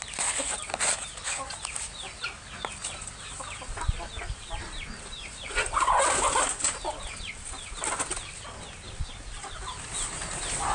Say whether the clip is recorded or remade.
recorded